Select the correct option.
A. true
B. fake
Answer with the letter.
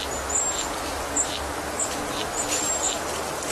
A